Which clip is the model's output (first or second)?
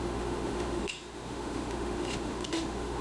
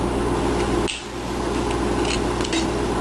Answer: first